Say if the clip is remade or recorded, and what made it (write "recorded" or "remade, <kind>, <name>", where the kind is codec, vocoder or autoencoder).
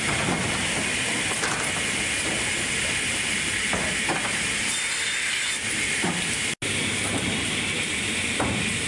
recorded